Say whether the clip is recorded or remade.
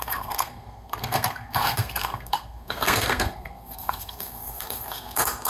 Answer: remade